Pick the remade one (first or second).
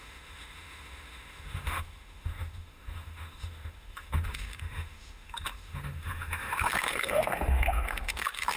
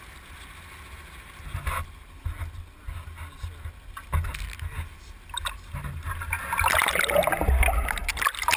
first